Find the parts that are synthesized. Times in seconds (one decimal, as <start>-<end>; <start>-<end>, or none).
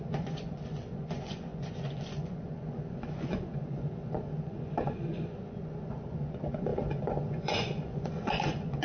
0.0-8.8